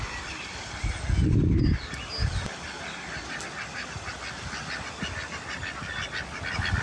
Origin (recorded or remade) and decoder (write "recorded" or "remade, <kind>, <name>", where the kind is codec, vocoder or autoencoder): recorded